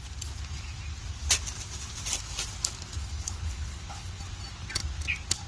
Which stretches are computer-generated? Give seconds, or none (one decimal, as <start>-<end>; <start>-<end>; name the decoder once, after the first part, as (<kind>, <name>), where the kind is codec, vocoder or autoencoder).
3.0-4.2 (codec, HILCodec)